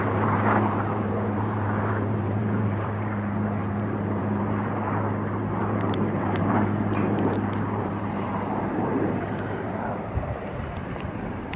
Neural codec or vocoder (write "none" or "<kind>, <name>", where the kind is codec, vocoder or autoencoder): vocoder, BigVGAN v2